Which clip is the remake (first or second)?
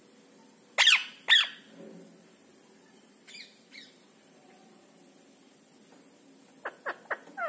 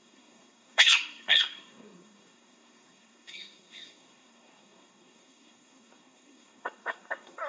second